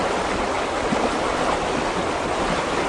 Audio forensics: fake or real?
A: real